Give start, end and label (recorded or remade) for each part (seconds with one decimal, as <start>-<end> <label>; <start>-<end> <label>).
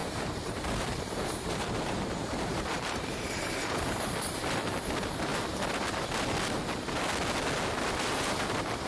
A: 0.0-3.7 remade; 3.7-8.9 recorded